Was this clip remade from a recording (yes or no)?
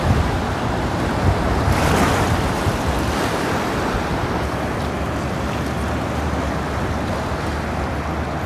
no